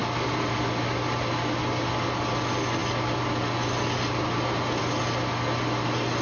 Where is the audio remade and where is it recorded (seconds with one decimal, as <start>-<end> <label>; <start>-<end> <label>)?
0.0-6.2 recorded